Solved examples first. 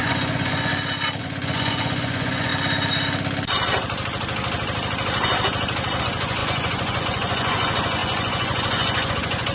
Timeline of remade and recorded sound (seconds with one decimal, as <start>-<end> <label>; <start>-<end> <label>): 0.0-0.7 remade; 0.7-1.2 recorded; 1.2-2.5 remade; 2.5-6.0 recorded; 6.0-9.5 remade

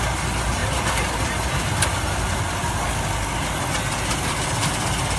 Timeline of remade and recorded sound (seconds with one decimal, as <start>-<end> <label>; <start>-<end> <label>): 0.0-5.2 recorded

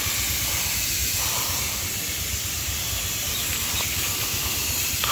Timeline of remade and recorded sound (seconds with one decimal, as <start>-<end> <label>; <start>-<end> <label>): 0.0-5.1 remade

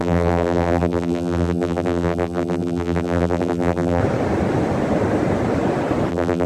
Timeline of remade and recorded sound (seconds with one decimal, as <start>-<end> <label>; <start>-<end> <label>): 0.0-4.0 remade; 4.0-6.1 recorded; 6.1-6.5 remade

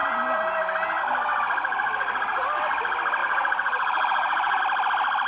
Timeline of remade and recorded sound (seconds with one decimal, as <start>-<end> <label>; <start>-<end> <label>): 0.0-1.7 recorded; 1.7-2.4 remade; 2.4-3.2 recorded; 3.2-4.6 remade; 4.6-5.3 recorded

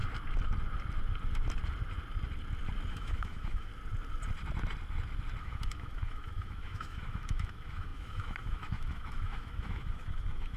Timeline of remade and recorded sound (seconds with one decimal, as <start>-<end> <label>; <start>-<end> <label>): 0.0-2.9 recorded; 2.9-3.7 remade; 3.7-5.4 recorded; 5.4-10.6 remade

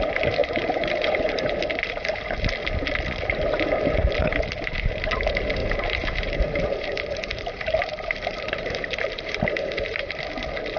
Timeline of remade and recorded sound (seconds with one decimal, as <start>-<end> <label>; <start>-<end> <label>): 0.0-0.4 recorded; 0.4-1.5 remade; 1.5-5.6 recorded; 5.6-10.2 remade; 10.2-10.8 recorded